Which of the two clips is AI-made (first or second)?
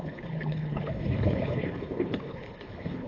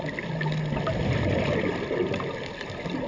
first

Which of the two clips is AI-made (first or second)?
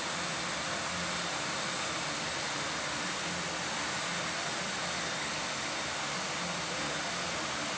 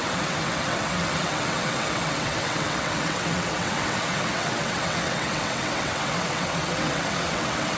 second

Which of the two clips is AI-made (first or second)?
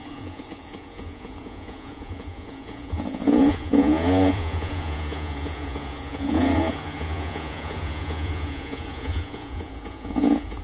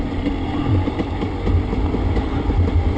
first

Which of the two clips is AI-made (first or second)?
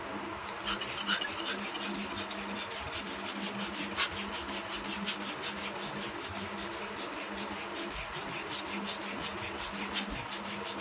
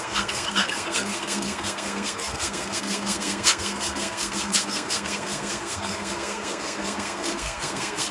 second